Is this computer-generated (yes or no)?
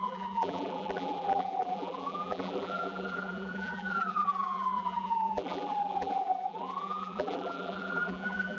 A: yes